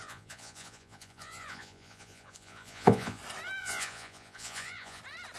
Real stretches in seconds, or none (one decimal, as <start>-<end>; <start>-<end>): 3.2-3.6; 5.0-5.4